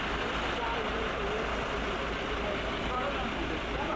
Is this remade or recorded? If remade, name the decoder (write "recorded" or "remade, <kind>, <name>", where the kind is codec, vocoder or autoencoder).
recorded